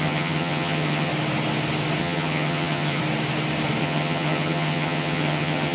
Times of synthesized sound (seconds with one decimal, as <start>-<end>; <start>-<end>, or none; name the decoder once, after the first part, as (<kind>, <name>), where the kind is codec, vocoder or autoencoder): 0.0-1.1 (vocoder, HiFi-GAN); 2.0-3.0; 3.8-5.7